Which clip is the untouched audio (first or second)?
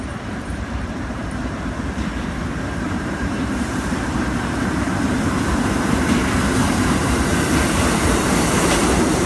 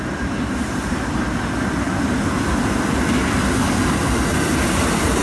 second